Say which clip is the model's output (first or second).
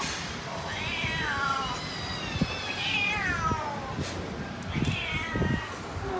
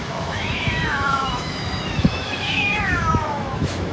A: second